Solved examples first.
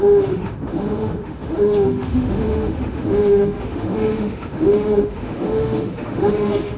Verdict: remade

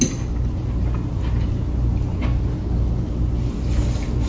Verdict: recorded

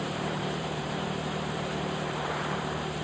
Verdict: remade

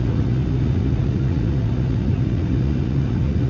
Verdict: remade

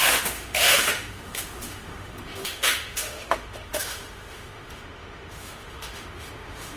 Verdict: remade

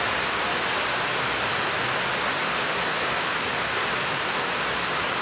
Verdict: recorded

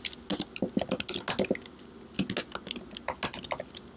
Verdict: recorded